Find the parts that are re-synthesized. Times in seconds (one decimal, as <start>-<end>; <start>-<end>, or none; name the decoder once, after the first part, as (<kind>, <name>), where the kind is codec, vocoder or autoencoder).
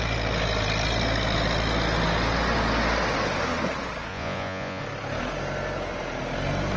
4.1-4.8 (vocoder, Vocos)